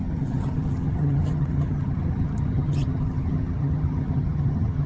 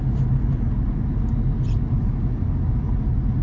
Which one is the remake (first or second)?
first